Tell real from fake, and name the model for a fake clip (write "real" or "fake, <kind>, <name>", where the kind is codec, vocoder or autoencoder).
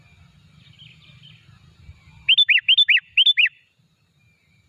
real